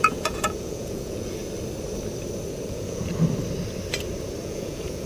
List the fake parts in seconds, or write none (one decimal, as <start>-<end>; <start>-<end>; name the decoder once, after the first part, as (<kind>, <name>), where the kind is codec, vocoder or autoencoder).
0.0-1.4 (vocoder, Vocos); 2.7-3.1; 4.4-5.1